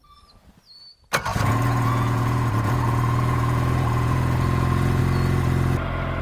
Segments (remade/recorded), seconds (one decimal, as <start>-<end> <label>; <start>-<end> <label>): 0.0-1.3 recorded; 1.3-5.0 remade; 5.0-6.2 recorded

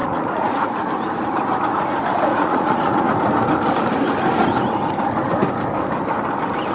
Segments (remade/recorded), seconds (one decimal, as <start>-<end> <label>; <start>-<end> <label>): 0.0-0.9 remade; 0.9-2.3 recorded; 2.3-3.0 remade; 3.0-6.7 recorded

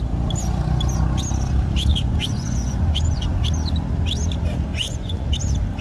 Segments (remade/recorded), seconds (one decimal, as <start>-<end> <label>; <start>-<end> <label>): 0.0-1.9 recorded; 1.9-3.4 remade; 3.4-4.7 recorded; 4.7-5.3 remade; 5.3-5.8 recorded

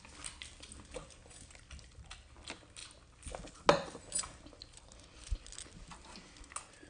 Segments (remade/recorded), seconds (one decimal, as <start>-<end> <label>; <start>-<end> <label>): 0.0-6.9 recorded

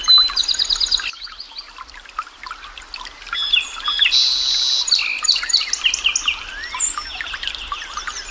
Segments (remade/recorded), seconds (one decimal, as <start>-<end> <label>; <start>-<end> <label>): 0.0-8.3 recorded

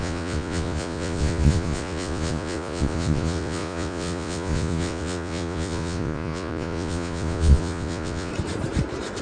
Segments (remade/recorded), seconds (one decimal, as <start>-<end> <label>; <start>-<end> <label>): 0.0-8.3 remade; 8.3-9.2 recorded